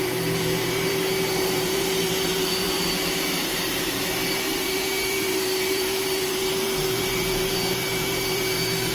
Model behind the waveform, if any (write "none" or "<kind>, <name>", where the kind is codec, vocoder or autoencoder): vocoder, BigVGAN v2